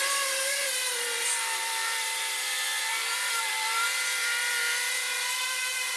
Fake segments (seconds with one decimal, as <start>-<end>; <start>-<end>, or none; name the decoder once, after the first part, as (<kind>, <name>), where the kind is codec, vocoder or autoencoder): 0.0-6.0 (vocoder, BigVGAN v2)